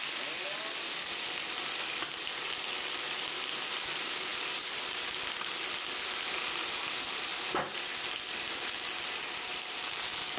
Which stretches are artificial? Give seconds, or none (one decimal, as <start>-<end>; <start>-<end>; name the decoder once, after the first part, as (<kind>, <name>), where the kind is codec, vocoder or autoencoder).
none